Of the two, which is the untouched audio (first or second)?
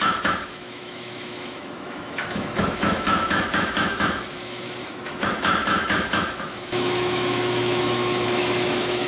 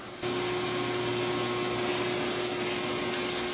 second